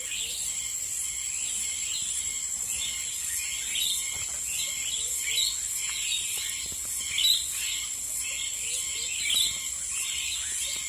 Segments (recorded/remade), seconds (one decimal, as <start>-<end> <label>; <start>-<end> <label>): 0.0-10.9 recorded